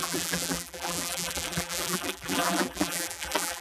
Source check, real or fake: fake